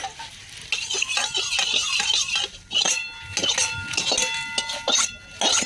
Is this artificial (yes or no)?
no